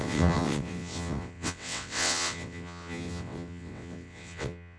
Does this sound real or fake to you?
fake